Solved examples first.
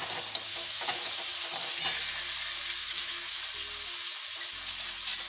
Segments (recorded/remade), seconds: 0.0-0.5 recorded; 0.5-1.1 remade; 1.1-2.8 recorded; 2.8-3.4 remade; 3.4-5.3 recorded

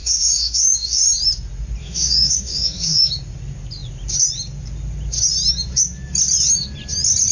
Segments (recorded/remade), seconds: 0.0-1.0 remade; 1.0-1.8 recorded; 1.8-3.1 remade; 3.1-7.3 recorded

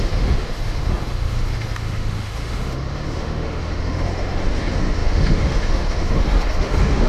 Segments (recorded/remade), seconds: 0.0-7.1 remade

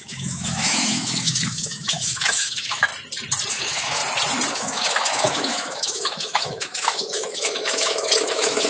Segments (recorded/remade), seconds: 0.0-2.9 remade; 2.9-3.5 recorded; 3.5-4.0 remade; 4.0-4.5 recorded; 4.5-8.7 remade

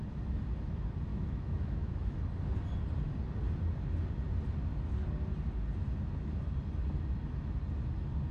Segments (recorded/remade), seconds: 0.0-1.1 recorded; 1.1-2.2 remade; 2.2-8.3 recorded